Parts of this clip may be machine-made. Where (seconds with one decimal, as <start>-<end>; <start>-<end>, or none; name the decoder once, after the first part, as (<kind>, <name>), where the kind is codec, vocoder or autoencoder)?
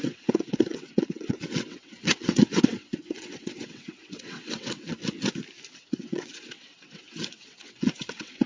0.0-5.0 (vocoder, WaveNeXt); 5.7-8.5